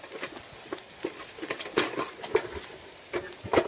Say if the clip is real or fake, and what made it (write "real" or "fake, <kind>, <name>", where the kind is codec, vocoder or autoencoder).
real